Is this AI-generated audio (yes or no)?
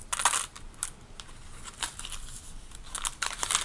no